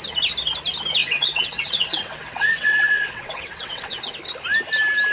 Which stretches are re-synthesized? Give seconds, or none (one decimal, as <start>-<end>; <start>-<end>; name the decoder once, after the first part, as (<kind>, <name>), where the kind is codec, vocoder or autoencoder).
1.0-4.0 (vocoder, WaveNeXt)